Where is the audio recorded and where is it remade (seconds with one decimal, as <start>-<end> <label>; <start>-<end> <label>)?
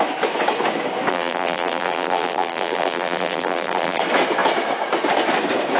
0.0-1.1 recorded; 1.1-4.0 remade; 4.0-5.8 recorded